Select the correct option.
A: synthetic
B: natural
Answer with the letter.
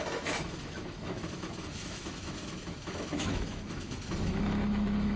A